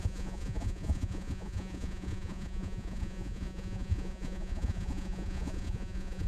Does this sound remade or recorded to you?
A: remade